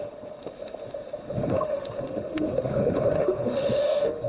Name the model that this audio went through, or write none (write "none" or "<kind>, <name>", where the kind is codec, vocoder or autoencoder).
autoencoder, DAC-VAE